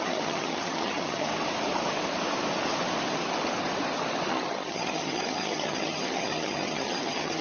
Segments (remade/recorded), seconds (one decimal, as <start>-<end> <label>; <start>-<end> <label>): 0.0-1.3 remade; 1.3-4.3 recorded; 4.3-7.4 remade